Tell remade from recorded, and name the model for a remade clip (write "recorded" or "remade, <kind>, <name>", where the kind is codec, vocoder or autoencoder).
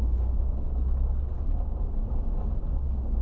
recorded